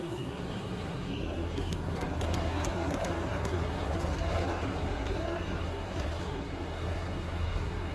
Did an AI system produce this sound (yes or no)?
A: yes